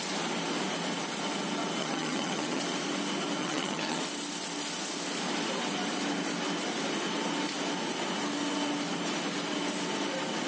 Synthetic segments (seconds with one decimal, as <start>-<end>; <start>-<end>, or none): 1.8-2.6; 3.4-4.0